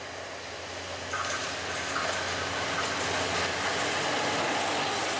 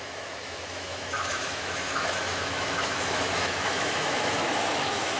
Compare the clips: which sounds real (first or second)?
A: first